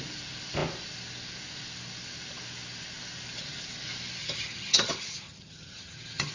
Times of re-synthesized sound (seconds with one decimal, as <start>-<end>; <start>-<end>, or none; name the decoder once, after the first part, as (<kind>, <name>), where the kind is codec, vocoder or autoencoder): 4.2-6.3 (vocoder, HiFi-GAN)

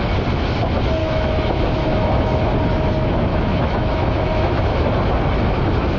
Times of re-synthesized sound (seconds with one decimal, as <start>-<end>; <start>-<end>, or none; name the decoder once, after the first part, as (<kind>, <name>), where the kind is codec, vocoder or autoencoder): 1.0-2.4 (autoencoder, DAC-VAE); 3.3-4.9